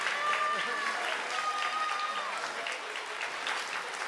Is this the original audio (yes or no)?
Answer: yes